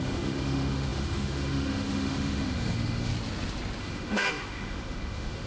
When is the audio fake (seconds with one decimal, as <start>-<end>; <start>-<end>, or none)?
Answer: 0.0-3.1; 3.8-5.5